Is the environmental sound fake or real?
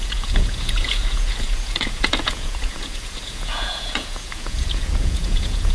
fake